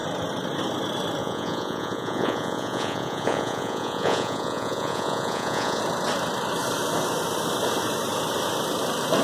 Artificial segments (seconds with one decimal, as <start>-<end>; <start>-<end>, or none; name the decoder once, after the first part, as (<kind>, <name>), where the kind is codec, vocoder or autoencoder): 1.2-5.8 (vocoder, Vocos)